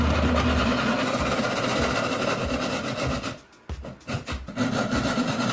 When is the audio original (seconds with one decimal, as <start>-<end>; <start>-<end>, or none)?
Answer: 0.0-5.5